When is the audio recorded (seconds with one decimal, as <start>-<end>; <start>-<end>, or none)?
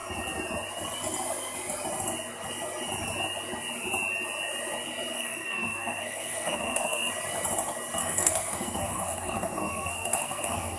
0.0-5.1; 7.1-8.0